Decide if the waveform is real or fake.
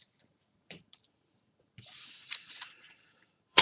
fake